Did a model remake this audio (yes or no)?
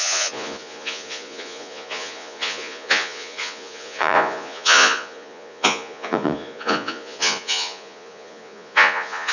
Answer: yes